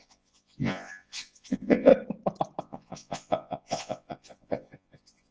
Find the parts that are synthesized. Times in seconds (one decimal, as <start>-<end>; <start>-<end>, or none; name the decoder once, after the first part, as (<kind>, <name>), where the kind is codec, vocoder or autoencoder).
0.0-1.9 (vocoder, Vocos); 2.6-5.3